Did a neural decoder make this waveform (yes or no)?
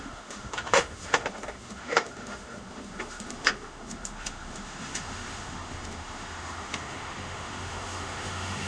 yes